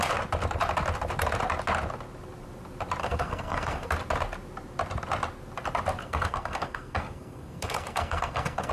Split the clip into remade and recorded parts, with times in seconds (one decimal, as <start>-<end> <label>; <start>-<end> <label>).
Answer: 0.0-3.0 recorded; 3.0-3.9 remade; 3.9-6.0 recorded; 6.0-8.7 remade